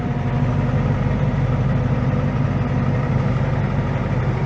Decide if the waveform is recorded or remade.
recorded